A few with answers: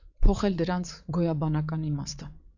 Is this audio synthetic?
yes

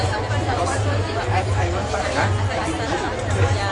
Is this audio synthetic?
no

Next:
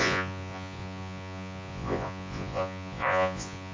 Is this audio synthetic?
yes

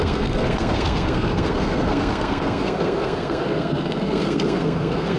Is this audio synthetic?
yes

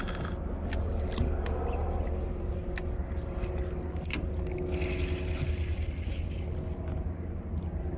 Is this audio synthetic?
no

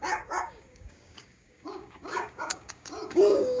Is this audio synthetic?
yes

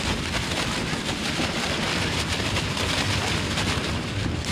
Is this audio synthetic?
no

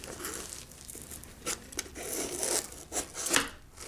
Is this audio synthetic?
no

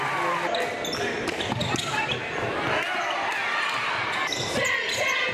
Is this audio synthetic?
no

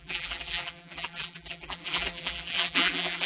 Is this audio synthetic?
yes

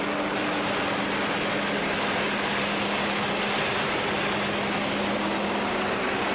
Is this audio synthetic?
no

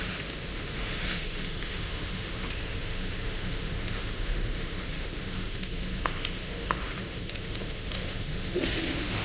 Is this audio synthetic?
yes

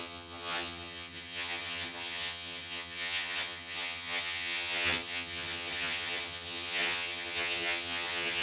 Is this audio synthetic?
yes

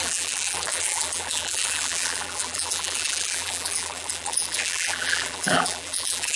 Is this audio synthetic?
yes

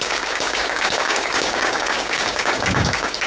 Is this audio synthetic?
yes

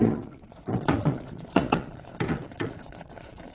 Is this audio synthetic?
yes